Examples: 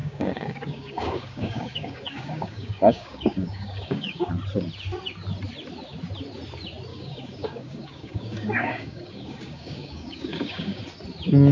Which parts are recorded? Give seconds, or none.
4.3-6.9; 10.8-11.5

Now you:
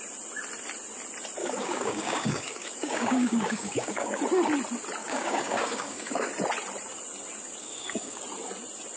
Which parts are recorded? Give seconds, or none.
0.0-1.4; 4.2-5.0; 6.3-7.6; 8.2-9.0

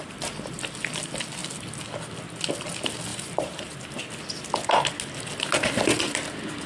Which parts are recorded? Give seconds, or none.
0.0-3.1; 4.0-6.7

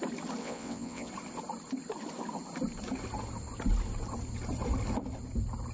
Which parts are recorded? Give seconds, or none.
0.0-0.4; 1.1-5.7

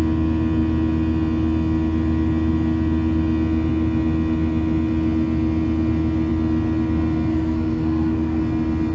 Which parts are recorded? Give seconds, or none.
0.0-7.3; 8.4-8.9

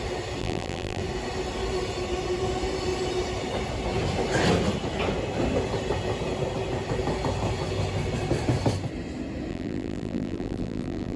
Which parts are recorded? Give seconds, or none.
0.0-0.4; 1.0-9.5